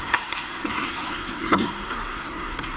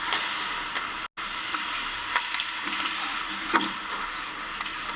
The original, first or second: second